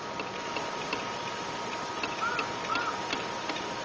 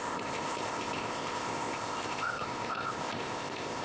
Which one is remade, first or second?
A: second